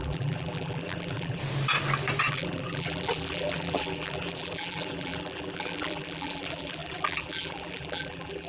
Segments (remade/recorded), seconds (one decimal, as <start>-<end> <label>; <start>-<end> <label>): 0.0-1.4 remade; 1.4-2.3 recorded; 2.3-8.5 remade